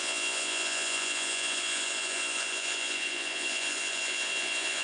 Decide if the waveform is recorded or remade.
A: remade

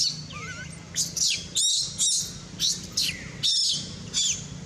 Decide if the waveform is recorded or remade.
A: recorded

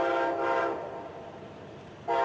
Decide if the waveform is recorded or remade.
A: recorded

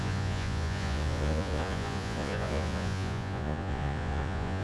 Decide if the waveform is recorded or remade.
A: remade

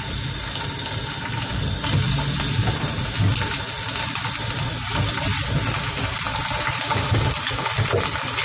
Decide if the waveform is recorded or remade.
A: recorded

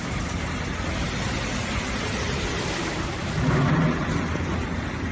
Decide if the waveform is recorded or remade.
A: recorded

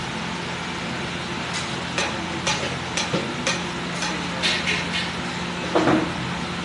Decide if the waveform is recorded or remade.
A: recorded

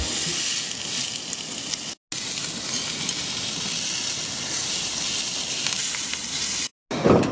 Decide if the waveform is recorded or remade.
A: recorded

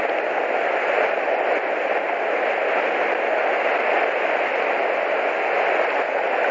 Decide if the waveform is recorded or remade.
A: recorded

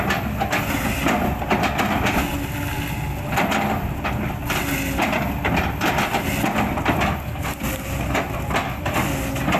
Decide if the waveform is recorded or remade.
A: recorded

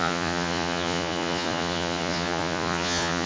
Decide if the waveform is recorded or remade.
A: remade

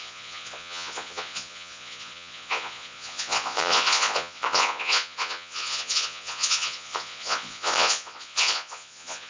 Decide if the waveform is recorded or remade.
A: remade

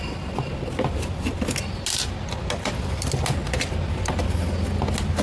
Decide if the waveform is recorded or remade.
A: recorded